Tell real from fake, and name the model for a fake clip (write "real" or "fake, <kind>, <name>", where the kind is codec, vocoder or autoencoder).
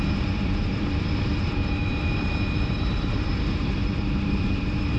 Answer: fake, vocoder, BigVGAN v2